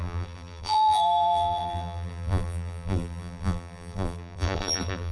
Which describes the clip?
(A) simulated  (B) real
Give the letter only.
A